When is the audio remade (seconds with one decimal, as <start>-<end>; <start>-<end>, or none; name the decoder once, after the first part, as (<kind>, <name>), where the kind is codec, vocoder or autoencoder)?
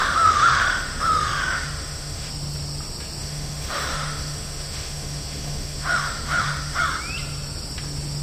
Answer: 0.0-2.3 (autoencoder, DAC-VAE); 3.2-6.8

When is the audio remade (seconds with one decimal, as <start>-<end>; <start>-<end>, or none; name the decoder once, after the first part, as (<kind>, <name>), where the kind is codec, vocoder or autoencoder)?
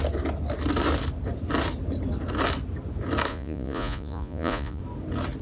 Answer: 3.3-4.8 (vocoder, Vocos)